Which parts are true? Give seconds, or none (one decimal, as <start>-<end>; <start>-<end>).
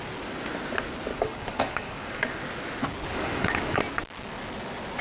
0.0-1.1; 2.4-3.1; 3.8-5.0